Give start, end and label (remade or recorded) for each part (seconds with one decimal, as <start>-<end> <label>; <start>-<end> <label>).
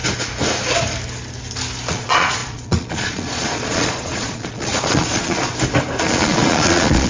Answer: 0.0-1.9 recorded; 1.9-5.5 remade; 5.5-6.0 recorded; 6.0-7.1 remade